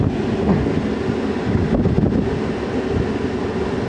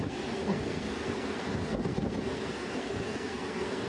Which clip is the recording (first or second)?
first